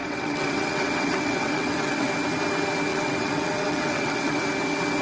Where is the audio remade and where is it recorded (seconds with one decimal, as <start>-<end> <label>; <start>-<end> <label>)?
0.0-2.1 remade; 2.1-2.9 recorded; 2.9-4.4 remade; 4.4-5.0 recorded